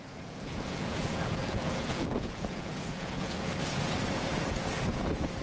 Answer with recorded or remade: remade